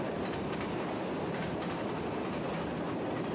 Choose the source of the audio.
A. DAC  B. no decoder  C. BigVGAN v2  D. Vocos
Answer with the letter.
B